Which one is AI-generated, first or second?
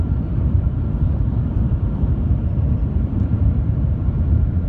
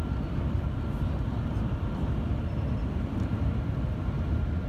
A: first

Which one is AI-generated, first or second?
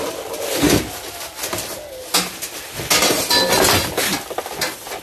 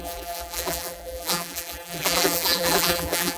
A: second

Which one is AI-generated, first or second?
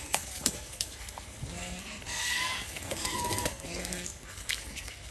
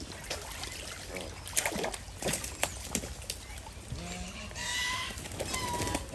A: first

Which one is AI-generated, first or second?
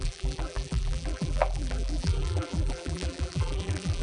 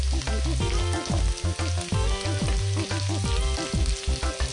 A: first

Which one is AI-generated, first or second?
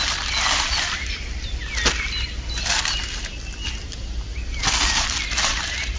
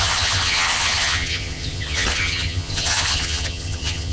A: second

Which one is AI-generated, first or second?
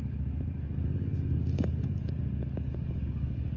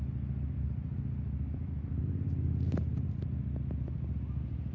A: first